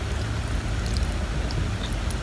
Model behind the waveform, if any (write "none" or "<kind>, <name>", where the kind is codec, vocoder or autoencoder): none